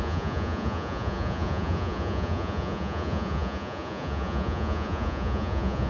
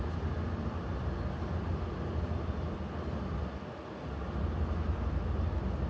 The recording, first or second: second